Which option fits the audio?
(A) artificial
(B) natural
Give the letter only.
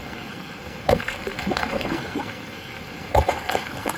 A